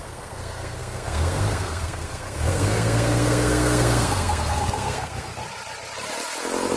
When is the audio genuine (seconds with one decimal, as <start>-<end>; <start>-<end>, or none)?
5.4-6.8